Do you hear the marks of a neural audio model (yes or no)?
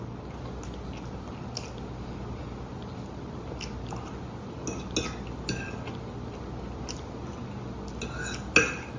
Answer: no